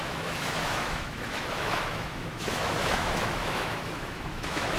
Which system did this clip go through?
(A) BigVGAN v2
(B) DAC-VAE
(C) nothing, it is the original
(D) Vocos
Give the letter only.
B